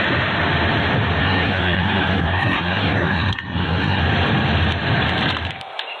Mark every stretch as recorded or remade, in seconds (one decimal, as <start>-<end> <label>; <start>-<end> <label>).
0.0-1.2 recorded; 1.2-4.0 remade; 4.0-6.0 recorded